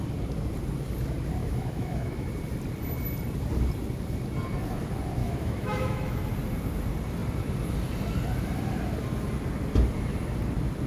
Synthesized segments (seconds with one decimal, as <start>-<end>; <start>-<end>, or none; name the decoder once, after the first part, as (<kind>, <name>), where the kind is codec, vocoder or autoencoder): 1.4-2.3 (autoencoder, DAC-VAE); 5.2-6.2